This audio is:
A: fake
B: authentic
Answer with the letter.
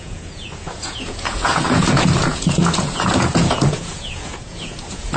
A